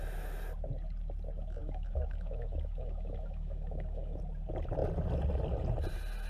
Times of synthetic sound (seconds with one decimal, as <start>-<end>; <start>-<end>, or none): 1.6-4.2